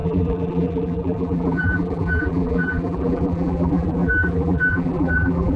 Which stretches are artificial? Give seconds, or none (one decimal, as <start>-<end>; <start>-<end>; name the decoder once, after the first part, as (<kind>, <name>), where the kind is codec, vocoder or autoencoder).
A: 0.0-5.6 (vocoder, BigVGAN v2)